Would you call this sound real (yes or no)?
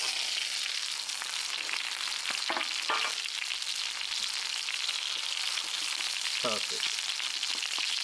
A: yes